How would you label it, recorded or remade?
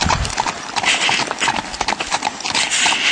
recorded